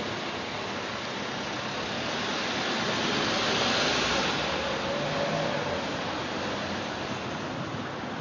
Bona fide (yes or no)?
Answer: yes